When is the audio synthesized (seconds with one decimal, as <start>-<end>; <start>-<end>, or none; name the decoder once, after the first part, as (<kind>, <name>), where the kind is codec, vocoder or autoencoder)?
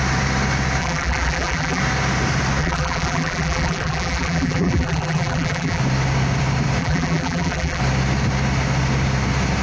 0.8-1.8 (vocoder, BigVGAN v2); 2.6-5.8; 6.8-7.8